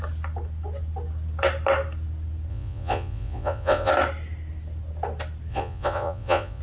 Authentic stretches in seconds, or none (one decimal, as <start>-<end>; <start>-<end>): 0.0-2.5; 3.9-5.5